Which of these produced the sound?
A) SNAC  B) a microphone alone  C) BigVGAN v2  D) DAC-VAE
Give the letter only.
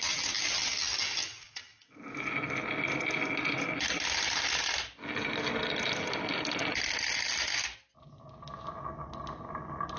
B